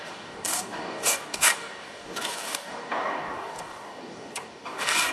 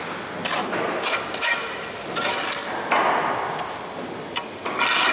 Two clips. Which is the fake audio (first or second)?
first